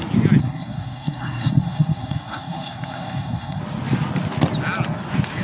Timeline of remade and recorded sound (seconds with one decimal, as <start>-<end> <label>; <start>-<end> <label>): 0.0-0.4 recorded; 0.4-3.6 remade; 3.6-5.4 recorded